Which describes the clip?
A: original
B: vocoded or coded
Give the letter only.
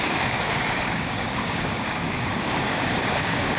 B